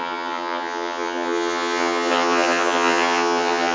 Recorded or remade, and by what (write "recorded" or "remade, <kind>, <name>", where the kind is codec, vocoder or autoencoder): remade, vocoder, HiFi-GAN